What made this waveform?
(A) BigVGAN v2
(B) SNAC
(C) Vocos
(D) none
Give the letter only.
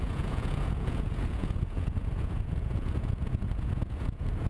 C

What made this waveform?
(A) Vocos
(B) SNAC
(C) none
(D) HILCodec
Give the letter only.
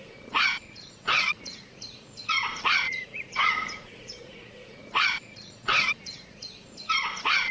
A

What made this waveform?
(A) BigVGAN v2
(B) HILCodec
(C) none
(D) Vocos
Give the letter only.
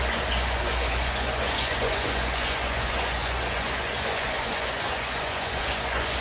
D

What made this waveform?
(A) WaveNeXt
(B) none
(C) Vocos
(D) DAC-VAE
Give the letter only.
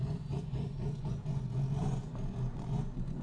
C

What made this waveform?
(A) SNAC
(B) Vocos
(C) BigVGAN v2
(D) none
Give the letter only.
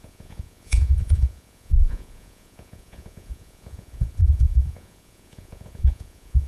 B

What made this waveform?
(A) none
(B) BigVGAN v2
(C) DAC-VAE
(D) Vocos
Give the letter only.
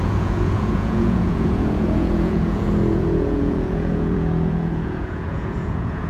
D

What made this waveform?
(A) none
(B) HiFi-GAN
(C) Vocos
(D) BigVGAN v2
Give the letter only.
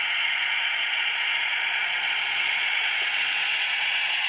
C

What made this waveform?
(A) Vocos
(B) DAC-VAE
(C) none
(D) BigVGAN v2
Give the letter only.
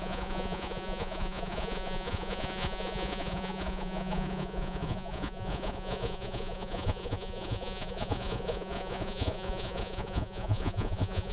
A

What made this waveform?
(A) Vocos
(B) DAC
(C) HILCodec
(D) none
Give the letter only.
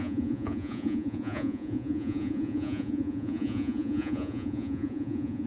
A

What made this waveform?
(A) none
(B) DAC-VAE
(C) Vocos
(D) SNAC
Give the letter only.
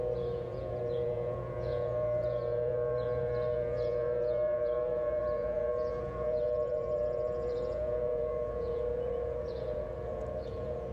C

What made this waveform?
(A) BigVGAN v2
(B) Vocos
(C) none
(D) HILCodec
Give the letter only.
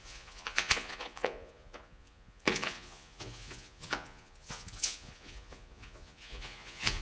B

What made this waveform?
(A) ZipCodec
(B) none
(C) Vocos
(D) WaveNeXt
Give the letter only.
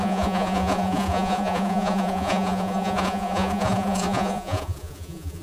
C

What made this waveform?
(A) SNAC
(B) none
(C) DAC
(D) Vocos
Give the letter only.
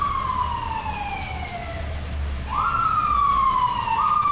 B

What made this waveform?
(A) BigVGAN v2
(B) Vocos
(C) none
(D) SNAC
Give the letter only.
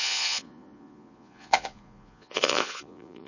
B